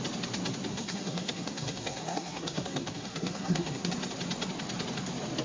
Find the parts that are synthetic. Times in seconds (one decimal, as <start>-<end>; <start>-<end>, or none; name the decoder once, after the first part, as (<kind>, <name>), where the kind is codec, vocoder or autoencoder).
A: 0.7-3.9 (codec, SNAC)